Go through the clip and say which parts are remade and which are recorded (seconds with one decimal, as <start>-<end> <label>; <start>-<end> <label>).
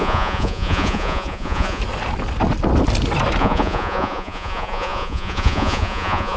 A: 0.0-1.8 remade; 1.8-3.4 recorded; 3.4-6.4 remade